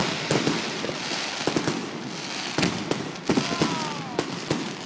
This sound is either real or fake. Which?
real